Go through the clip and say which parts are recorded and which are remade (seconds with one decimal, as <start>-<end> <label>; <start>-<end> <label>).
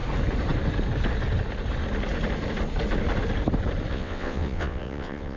0.0-3.9 recorded; 3.9-5.4 remade